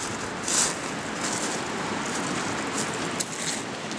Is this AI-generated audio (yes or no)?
no